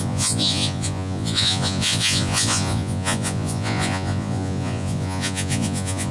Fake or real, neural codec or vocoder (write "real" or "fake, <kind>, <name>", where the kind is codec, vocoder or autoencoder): fake, vocoder, Vocos